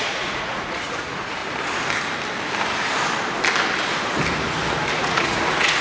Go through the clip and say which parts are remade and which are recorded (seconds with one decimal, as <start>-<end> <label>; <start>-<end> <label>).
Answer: 0.0-1.4 remade; 1.4-4.9 recorded; 4.9-5.8 remade